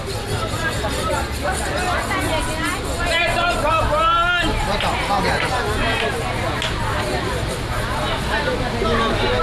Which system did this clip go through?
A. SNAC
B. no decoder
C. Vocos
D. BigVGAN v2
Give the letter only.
B